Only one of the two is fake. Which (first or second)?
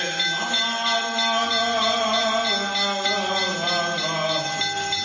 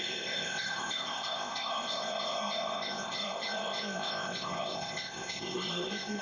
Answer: second